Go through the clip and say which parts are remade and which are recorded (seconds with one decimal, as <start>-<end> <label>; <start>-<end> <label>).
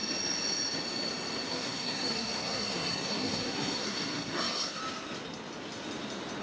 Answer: 0.0-1.5 recorded; 1.5-4.8 remade; 4.8-6.4 recorded